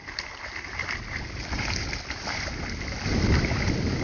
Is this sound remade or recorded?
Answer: recorded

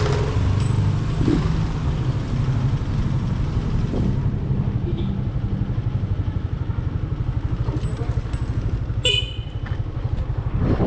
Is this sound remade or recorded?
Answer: recorded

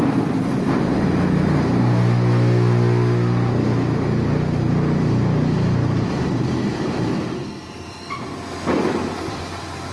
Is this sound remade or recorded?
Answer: recorded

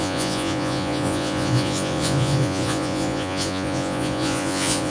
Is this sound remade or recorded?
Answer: remade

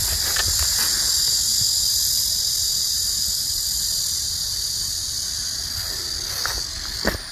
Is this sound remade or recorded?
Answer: recorded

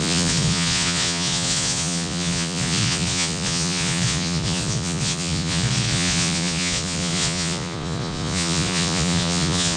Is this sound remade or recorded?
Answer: remade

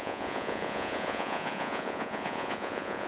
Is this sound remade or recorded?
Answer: remade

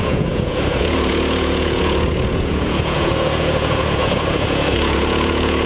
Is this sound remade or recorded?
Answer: remade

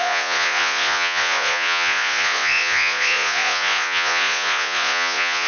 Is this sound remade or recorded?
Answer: remade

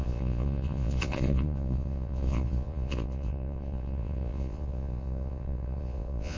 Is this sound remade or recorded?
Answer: remade